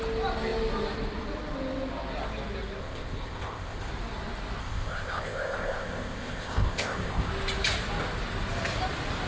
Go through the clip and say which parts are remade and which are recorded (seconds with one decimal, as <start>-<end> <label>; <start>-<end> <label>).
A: 0.0-2.8 recorded; 2.8-3.9 remade; 3.9-4.6 recorded; 4.6-7.3 remade; 7.3-9.3 recorded